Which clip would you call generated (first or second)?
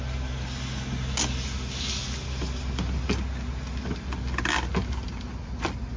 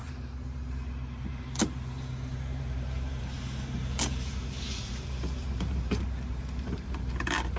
second